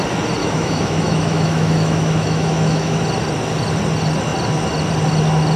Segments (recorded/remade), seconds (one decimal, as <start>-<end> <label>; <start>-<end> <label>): 0.0-0.4 recorded; 0.4-3.0 remade; 3.0-5.6 recorded